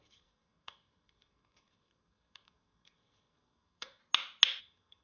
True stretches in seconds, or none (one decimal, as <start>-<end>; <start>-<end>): 4.0-4.6